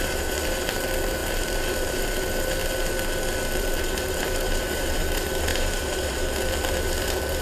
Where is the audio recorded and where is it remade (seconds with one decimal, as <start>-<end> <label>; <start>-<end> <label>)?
0.0-2.6 remade; 2.6-3.6 recorded; 3.6-7.4 remade